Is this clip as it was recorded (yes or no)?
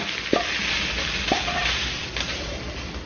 yes